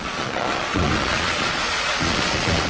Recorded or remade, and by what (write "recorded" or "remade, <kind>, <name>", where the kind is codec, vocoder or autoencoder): remade, vocoder, Vocos